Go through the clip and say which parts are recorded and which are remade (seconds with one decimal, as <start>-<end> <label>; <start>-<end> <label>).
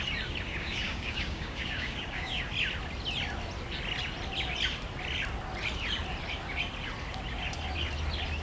0.0-0.5 recorded; 0.5-2.4 remade; 2.4-8.4 recorded